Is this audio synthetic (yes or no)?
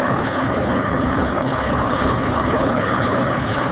yes